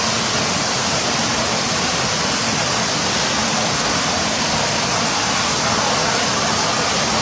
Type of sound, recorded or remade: recorded